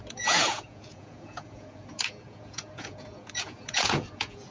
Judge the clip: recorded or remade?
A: remade